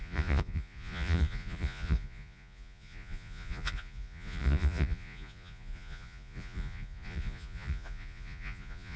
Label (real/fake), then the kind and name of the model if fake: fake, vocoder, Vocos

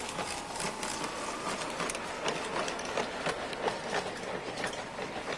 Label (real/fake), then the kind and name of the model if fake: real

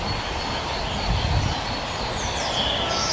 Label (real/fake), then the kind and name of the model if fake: real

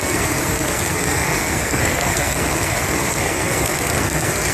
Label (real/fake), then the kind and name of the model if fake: fake, codec, SNAC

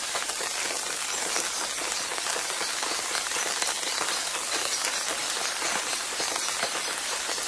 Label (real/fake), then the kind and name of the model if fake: real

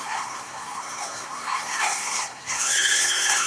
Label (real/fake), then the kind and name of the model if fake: fake, codec, SNAC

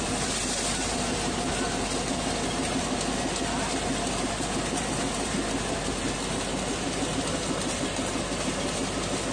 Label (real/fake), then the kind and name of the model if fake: real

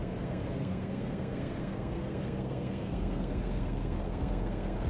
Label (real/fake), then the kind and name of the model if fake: fake, codec, SNAC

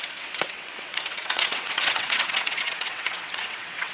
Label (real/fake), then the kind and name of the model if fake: fake, vocoder, WaveNeXt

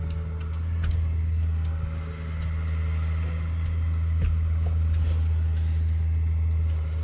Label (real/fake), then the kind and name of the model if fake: real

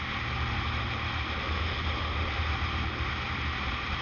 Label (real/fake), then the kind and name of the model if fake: real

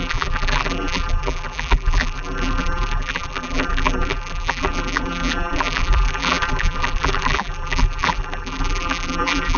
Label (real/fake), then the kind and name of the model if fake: fake, vocoder, BigVGAN v2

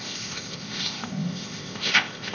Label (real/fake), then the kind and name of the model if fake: fake, codec, ZipCodec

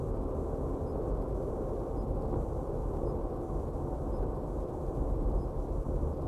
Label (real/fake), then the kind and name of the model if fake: real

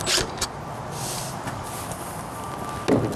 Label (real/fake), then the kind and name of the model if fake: real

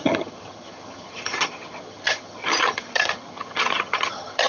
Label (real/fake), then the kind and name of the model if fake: fake, vocoder, HiFi-GAN